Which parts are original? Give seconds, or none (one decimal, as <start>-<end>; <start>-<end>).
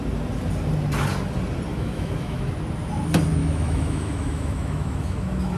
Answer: 0.0-1.7; 2.5-3.4